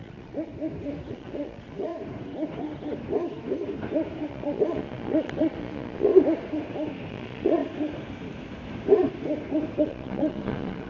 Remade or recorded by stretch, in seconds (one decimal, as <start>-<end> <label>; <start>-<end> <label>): 0.0-0.5 remade; 0.5-1.1 recorded; 1.1-1.9 remade; 1.9-4.3 recorded; 4.3-6.1 remade; 6.1-7.1 recorded; 7.1-7.6 remade; 7.6-9.8 recorded; 9.8-10.9 remade